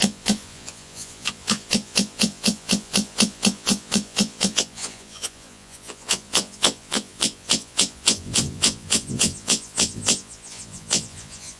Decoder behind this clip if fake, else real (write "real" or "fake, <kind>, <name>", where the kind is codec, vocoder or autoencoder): fake, vocoder, Vocos